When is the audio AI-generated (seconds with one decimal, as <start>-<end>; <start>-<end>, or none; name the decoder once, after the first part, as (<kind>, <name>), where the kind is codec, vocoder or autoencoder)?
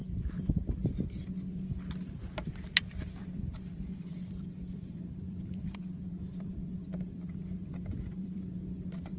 2.8-9.2 (vocoder, BigVGAN v2)